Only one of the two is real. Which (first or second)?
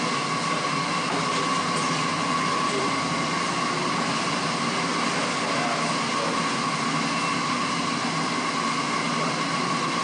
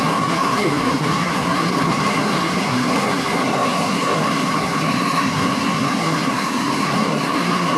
first